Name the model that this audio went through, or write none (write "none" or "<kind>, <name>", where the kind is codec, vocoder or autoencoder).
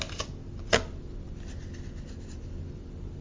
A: none